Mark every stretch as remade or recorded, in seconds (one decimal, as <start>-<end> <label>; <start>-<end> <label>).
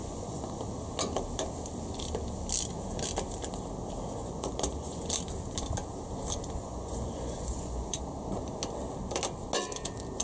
0.0-0.6 remade; 0.6-4.2 recorded; 4.2-5.0 remade; 5.0-6.6 recorded; 6.6-8.0 remade; 8.0-10.2 recorded